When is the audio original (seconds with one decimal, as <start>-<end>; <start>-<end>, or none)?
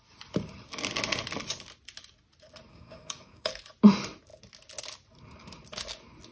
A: 0.0-2.7; 3.7-6.3